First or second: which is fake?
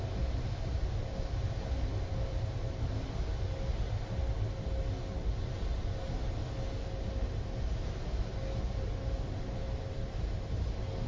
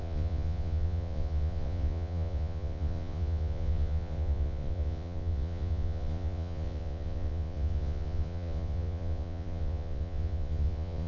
second